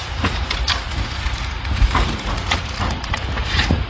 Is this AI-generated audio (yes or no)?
yes